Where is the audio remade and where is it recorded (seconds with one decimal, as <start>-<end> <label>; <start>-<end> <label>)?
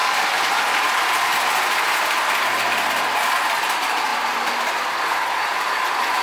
0.0-6.2 recorded